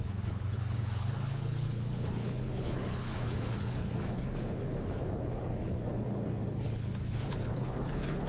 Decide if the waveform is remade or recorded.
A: remade